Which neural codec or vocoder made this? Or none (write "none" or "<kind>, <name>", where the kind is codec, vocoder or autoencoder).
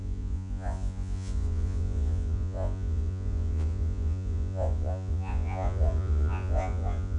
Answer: vocoder, Vocos